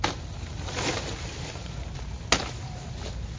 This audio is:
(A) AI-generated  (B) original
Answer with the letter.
B